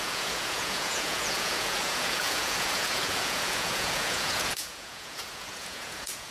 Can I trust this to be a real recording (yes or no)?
no